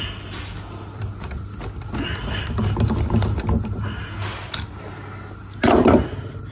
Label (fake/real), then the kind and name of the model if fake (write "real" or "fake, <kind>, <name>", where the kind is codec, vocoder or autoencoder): real